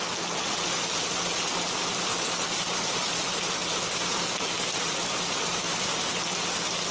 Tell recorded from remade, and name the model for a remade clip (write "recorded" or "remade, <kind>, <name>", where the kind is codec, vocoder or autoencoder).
recorded